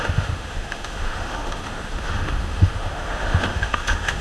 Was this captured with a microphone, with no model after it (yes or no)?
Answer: no